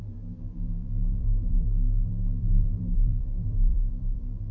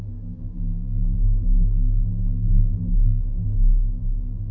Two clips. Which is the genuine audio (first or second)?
second